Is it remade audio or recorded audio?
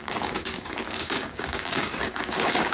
remade